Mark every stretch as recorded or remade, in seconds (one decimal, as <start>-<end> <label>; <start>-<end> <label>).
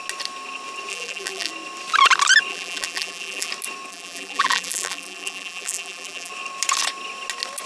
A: 0.0-0.9 recorded; 0.9-1.5 remade; 1.5-2.5 recorded; 2.5-3.5 remade; 3.5-3.9 recorded; 3.9-6.3 remade; 6.3-7.7 recorded